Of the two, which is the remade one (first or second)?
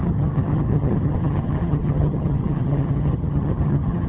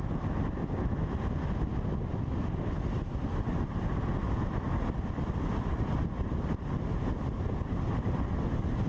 first